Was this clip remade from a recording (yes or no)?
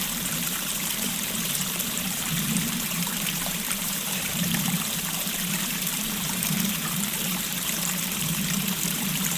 yes